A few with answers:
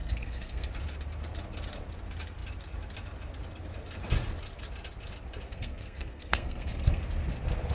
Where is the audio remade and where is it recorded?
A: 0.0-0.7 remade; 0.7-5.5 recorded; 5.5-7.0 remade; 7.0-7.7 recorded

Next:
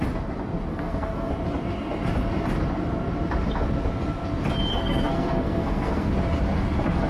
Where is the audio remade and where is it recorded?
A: 0.0-0.7 recorded; 0.7-1.3 remade; 1.3-4.7 recorded; 4.7-6.1 remade; 6.1-7.1 recorded

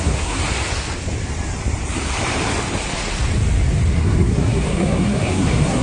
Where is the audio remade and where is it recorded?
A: 0.0-0.4 remade; 0.4-3.9 recorded; 3.9-5.8 remade

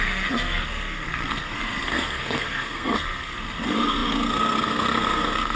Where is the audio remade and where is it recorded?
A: 0.0-5.6 remade

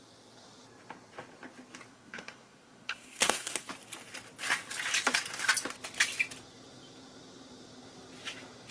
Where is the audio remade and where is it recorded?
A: 0.0-1.9 recorded; 1.9-3.7 remade; 3.7-8.7 recorded

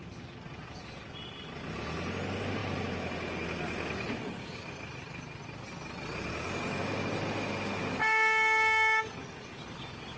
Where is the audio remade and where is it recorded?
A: 0.0-8.0 recorded; 8.0-9.0 remade; 9.0-10.2 recorded

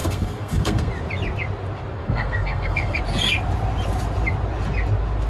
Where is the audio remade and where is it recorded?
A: 0.0-0.9 remade; 0.9-2.0 recorded; 2.0-3.0 remade; 3.0-5.3 recorded

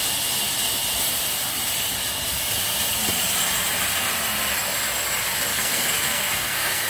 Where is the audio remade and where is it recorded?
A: 0.0-5.5 recorded; 5.5-6.9 remade